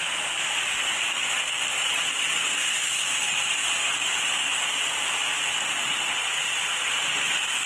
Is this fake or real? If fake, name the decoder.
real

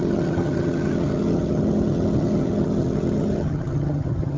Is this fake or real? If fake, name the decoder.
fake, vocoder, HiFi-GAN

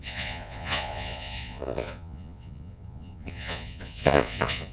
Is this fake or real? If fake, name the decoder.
fake, vocoder, Vocos